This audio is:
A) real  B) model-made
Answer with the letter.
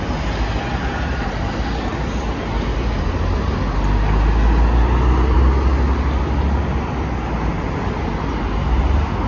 A